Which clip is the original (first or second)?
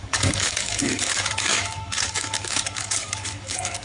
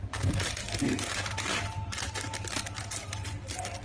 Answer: second